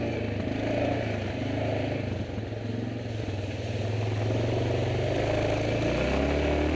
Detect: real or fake real